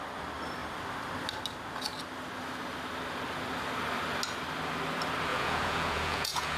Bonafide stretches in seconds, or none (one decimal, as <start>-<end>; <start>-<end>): 0.0-5.3